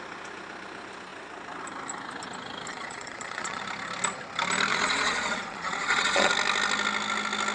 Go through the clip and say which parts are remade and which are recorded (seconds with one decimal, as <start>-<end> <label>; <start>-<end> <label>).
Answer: 0.0-2.7 recorded; 2.7-3.6 remade; 3.6-4.7 recorded; 4.7-6.3 remade; 6.3-7.5 recorded